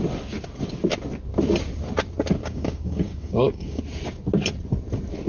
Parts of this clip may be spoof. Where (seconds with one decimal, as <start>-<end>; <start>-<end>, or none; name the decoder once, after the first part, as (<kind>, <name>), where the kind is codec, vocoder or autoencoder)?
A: 2.4-3.8 (codec, DAC)